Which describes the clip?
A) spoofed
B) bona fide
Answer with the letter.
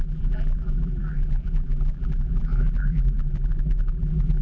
A